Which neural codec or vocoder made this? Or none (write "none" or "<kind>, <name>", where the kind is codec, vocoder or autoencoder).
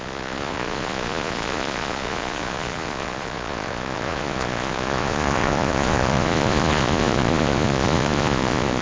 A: vocoder, Vocos